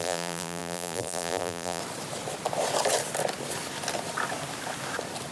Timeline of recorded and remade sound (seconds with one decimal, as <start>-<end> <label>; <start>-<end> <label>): 0.0-1.8 remade; 1.8-5.3 recorded